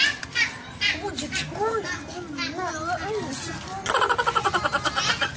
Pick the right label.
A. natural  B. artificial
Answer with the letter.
A